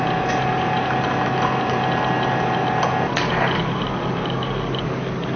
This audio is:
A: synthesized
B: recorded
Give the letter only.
B